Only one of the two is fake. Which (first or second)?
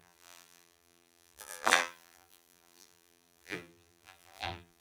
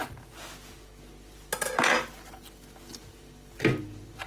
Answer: first